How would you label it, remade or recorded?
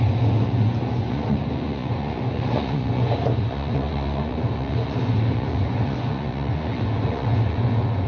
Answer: remade